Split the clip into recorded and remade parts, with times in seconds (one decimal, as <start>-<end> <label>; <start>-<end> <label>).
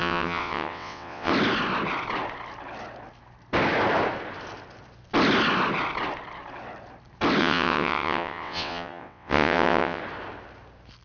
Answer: 0.0-1.3 remade; 1.3-7.4 recorded; 7.4-10.0 remade; 10.0-11.0 recorded